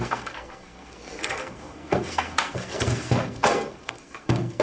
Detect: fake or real fake